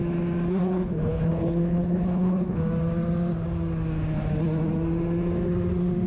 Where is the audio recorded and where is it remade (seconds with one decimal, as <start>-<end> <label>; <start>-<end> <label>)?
0.0-0.6 recorded; 0.6-2.6 remade; 2.6-6.1 recorded